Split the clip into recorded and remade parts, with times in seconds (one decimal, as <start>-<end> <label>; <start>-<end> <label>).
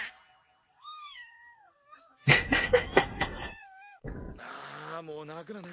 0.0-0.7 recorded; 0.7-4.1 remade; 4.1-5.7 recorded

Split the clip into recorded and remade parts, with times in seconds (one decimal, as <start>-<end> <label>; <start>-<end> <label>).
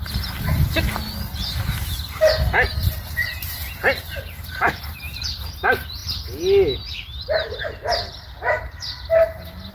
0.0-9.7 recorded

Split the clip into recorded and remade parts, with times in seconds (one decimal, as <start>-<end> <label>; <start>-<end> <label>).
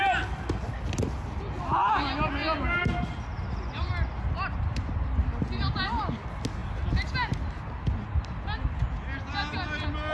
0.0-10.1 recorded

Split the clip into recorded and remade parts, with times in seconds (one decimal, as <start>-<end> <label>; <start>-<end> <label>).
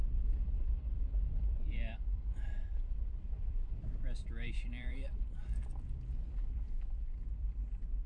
0.0-8.1 remade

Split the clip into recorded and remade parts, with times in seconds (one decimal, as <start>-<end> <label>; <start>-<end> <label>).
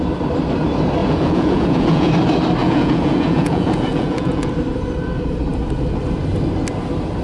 0.0-1.0 recorded; 1.0-2.1 remade; 2.1-2.6 recorded; 2.6-4.5 remade; 4.5-7.2 recorded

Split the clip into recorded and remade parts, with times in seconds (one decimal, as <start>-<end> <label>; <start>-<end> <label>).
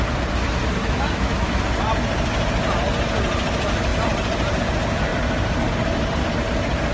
0.0-0.8 recorded; 0.8-1.6 remade; 1.6-6.9 recorded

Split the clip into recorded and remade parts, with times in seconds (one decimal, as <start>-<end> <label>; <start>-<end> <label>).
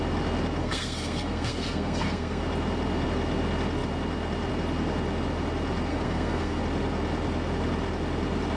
0.0-0.6 recorded; 0.6-2.4 remade; 2.4-5.9 recorded; 5.9-6.6 remade; 6.6-8.6 recorded